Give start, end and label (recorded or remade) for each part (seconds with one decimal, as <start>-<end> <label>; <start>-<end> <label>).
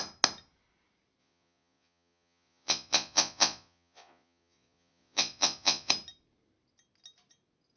0.0-1.2 recorded; 1.2-5.9 remade; 5.9-7.8 recorded